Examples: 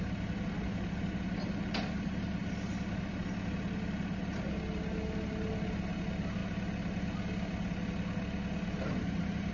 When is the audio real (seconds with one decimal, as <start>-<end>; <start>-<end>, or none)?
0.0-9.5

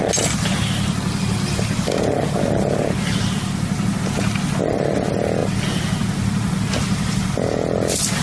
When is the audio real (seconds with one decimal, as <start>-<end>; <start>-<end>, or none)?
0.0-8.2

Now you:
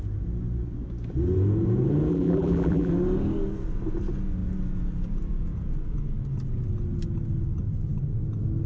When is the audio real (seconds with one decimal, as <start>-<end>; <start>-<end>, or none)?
0.0-2.1; 2.9-8.7

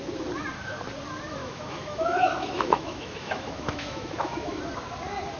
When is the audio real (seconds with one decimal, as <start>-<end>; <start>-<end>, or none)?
0.0-1.4; 4.6-5.4